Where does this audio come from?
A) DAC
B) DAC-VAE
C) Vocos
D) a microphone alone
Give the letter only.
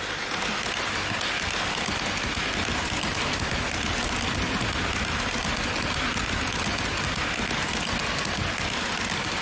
D